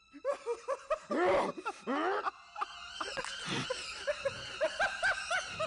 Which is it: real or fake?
real